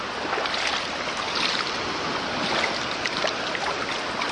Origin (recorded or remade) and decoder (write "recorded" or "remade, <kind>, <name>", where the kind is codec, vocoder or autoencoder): recorded